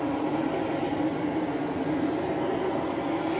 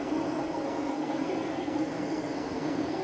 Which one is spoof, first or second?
second